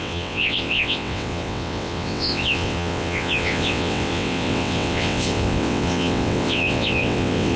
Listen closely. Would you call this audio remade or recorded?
remade